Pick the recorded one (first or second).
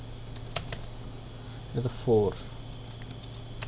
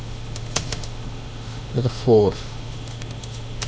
first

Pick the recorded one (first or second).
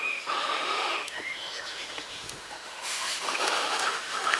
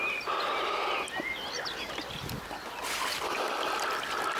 second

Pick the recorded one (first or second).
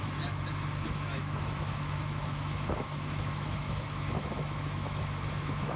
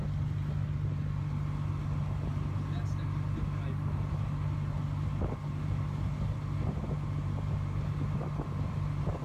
second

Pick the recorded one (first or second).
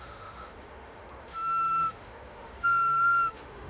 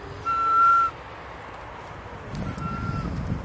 second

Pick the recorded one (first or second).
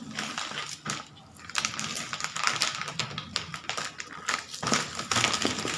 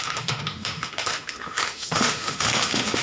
first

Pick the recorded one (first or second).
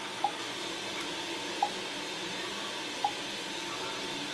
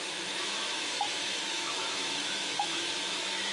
first